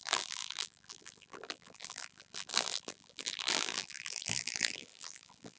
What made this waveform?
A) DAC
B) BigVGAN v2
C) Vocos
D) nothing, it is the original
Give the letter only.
B